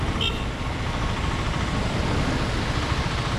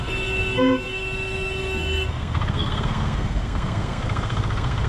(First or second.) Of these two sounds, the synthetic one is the second